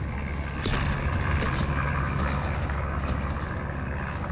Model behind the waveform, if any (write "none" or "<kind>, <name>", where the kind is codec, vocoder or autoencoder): none